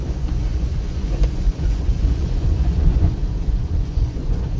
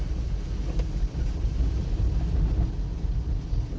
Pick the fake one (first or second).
first